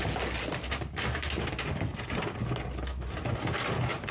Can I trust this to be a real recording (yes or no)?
yes